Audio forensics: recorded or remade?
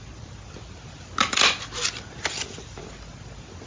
recorded